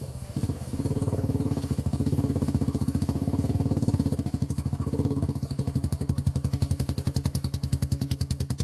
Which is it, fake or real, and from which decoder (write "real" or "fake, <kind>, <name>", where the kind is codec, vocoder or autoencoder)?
fake, codec, DAC